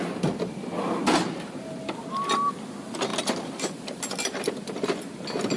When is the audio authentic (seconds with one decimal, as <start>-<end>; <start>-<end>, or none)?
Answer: 0.0-5.6